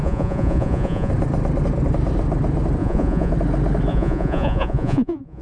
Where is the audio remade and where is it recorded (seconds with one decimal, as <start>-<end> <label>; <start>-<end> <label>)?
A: 0.0-1.1 remade; 1.1-2.8 recorded; 2.8-3.3 remade; 3.3-3.9 recorded; 3.9-5.4 remade

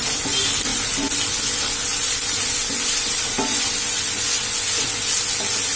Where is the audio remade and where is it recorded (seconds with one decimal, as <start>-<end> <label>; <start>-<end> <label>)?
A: 0.0-5.8 recorded

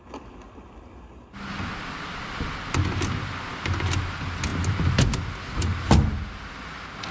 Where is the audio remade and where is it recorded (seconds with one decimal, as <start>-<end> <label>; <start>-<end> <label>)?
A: 0.0-7.1 recorded

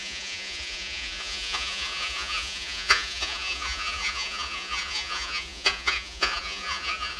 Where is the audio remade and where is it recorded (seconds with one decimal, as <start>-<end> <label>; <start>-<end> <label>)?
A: 0.0-7.2 remade

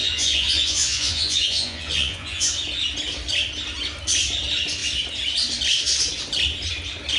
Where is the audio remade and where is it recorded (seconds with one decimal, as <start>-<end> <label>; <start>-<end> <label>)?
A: 0.0-2.5 remade; 2.5-7.2 recorded